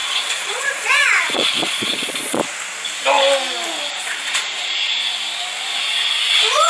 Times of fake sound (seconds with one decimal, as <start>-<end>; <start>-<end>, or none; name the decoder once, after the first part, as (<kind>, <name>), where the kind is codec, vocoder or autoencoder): 0.0-2.4 (vocoder, Vocos); 3.9-5.0; 5.8-6.7